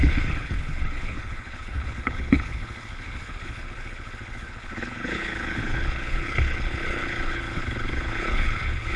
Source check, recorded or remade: remade